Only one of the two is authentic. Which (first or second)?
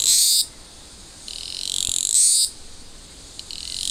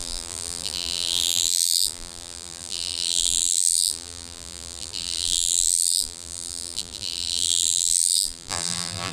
first